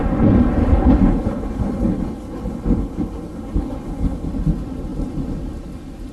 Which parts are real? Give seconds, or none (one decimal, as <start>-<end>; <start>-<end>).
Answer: 0.0-0.6; 4.3-6.1